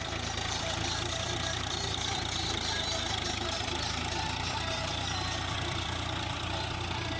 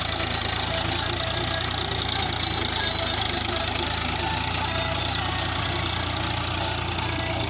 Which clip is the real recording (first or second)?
second